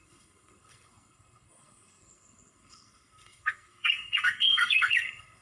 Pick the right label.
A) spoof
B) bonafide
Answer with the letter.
A